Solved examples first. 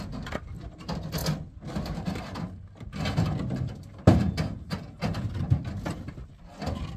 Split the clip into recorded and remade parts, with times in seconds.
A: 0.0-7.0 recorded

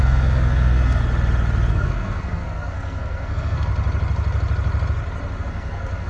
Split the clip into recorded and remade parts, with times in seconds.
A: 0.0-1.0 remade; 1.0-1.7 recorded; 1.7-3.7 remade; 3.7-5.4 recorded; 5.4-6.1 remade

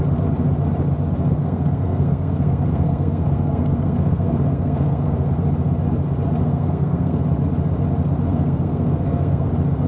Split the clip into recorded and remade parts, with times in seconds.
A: 0.0-1.4 recorded; 1.4-5.3 remade; 5.3-6.4 recorded; 6.4-7.2 remade; 7.2-8.3 recorded; 8.3-9.5 remade; 9.5-9.9 recorded

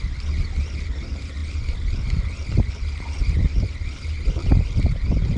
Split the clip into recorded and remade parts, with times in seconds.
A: 0.0-1.4 recorded; 1.4-2.7 remade; 2.7-5.4 recorded

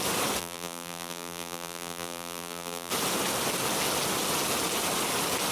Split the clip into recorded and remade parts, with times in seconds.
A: 0.0-0.4 recorded; 0.4-2.9 remade; 2.9-5.5 recorded